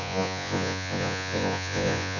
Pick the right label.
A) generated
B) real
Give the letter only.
A